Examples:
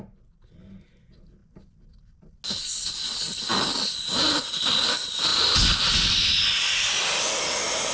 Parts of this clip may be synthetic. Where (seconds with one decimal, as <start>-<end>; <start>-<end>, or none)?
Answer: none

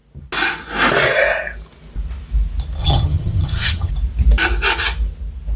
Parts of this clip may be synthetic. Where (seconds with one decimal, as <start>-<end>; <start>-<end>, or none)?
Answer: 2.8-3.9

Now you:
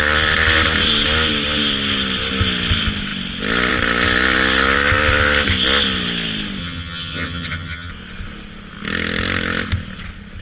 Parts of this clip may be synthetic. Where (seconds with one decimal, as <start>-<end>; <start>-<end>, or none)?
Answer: 6.6-7.9

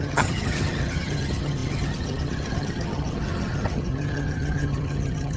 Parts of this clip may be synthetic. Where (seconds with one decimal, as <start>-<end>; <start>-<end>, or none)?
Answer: 0.0-5.4

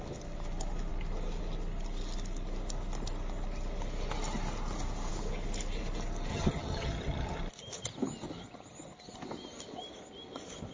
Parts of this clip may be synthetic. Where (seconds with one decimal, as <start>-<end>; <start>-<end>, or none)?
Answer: 6.3-7.4